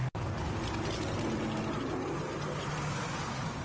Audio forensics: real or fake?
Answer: real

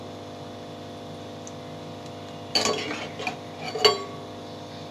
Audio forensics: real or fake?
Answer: real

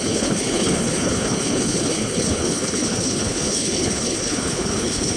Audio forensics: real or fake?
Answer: fake